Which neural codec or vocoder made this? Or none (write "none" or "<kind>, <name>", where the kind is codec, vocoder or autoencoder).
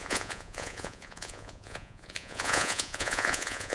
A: vocoder, Vocos